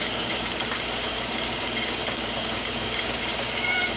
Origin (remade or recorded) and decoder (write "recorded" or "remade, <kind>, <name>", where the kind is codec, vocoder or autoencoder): remade, codec, DAC